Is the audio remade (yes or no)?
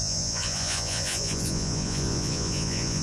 yes